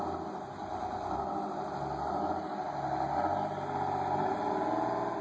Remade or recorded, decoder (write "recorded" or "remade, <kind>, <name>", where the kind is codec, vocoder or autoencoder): recorded